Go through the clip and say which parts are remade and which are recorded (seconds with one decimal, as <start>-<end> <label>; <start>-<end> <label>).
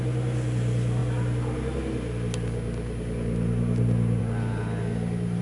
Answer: 0.0-5.4 recorded